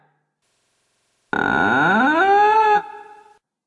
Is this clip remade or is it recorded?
recorded